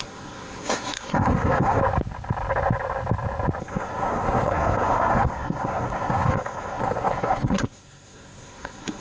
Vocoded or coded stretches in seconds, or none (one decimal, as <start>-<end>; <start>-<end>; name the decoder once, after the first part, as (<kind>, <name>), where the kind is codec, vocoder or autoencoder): 0.0-1.8 (codec, SNAC); 3.6-9.0